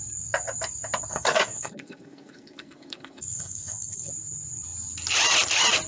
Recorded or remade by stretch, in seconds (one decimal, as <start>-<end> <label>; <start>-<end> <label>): 0.0-1.1 recorded; 1.1-4.1 remade; 4.1-5.9 recorded